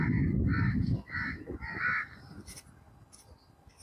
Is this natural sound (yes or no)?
yes